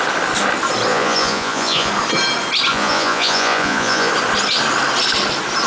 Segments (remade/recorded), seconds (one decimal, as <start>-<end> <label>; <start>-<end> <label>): 0.0-0.9 recorded; 0.9-1.9 remade; 1.9-2.7 recorded; 2.7-4.1 remade; 4.1-5.7 recorded